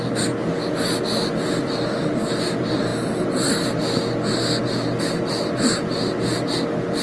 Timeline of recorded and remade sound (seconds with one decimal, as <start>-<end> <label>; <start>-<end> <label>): 0.0-7.0 recorded